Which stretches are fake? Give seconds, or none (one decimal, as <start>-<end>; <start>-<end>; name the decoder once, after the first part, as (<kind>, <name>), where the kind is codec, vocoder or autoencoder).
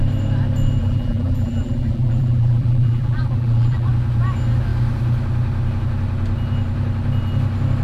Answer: 0.8-3.9 (vocoder, BigVGAN v2)